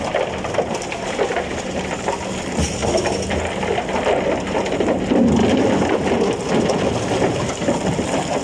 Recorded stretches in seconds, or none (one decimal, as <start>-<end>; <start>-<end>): 0.0-1.3; 2.0-8.4